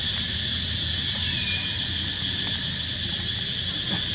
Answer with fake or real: real